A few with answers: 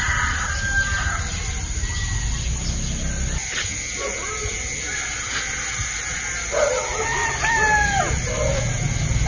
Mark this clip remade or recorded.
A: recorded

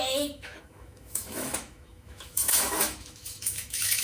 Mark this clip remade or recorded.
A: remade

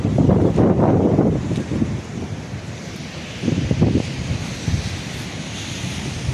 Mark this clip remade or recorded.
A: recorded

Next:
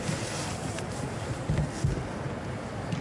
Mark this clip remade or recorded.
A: recorded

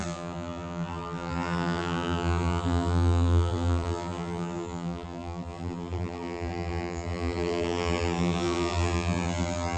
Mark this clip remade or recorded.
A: remade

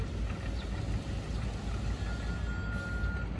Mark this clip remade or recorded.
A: recorded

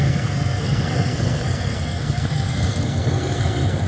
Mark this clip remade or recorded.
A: remade